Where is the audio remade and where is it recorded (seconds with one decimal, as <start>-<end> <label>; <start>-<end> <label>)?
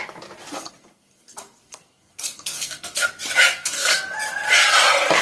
0.0-0.5 recorded; 0.5-3.1 remade; 3.1-3.5 recorded; 3.5-4.0 remade; 4.0-5.2 recorded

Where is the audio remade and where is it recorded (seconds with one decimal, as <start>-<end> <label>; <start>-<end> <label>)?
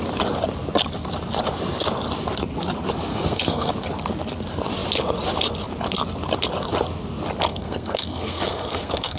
0.0-3.1 recorded; 3.1-3.7 remade; 3.7-7.5 recorded; 7.5-9.2 remade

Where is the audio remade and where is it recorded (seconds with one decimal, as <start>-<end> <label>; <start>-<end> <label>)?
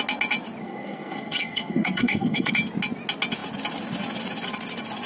0.0-0.6 recorded; 0.6-2.5 remade; 2.5-5.1 recorded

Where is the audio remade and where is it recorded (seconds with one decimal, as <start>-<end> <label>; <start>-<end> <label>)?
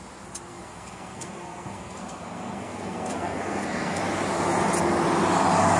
0.0-0.5 recorded; 0.5-4.0 remade; 4.0-5.8 recorded